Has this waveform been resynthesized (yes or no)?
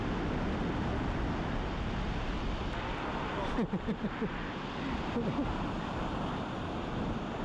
no